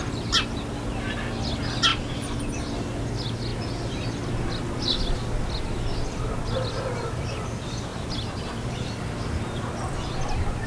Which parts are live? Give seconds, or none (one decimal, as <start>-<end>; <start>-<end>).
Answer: 0.0-1.9; 2.7-7.9; 9.0-10.7

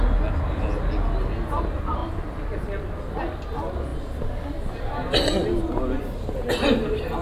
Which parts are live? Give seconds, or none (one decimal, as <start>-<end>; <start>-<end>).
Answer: 0.0-7.2

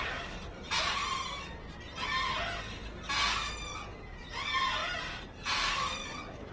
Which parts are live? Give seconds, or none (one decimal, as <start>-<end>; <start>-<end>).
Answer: 0.0-4.8

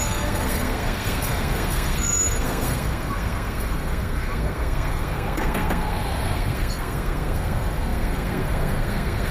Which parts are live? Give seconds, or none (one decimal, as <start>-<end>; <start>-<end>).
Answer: none